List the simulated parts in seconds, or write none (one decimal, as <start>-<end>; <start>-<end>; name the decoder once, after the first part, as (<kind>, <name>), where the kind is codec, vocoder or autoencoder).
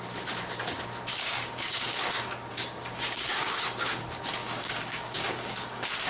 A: 1.1-4.0 (codec, DAC); 4.4-6.1